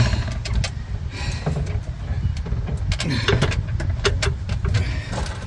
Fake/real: real